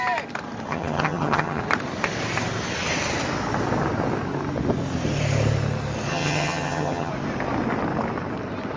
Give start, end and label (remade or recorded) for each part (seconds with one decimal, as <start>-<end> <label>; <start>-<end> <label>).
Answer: 0.0-0.7 recorded; 0.7-1.6 remade; 1.6-6.1 recorded; 6.1-7.1 remade; 7.1-8.8 recorded